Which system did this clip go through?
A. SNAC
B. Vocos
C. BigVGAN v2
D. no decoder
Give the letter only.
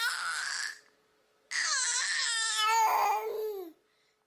D